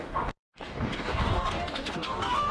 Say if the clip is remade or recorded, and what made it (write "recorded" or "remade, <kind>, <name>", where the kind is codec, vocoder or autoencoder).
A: remade, codec, DAC